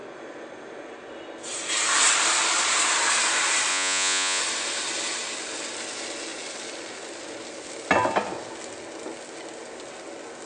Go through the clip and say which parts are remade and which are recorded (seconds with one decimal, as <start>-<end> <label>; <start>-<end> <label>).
0.0-3.7 recorded; 3.7-4.4 remade; 4.4-10.5 recorded